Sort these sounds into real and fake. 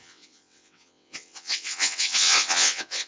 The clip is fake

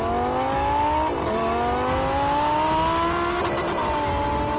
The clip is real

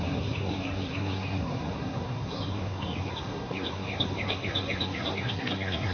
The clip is fake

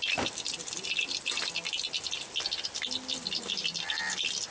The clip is real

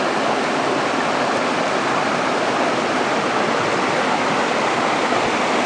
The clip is real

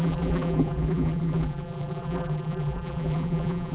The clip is fake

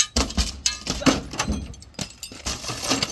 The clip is real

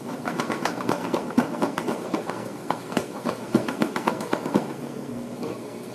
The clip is fake